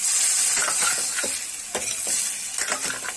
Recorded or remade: recorded